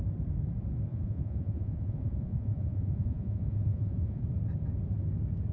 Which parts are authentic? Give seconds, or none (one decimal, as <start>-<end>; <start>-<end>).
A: 0.0-0.9; 4.2-5.5